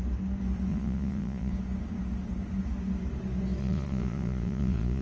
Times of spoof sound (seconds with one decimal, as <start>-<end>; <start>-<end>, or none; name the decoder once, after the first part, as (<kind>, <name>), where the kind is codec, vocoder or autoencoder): 0.7-1.5 (vocoder, Vocos); 3.6-5.0